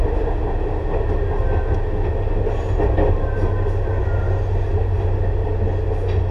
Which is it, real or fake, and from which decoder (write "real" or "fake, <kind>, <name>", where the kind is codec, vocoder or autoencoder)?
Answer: real